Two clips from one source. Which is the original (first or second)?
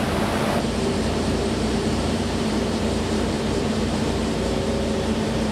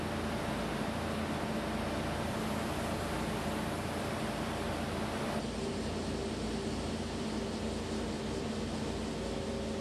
second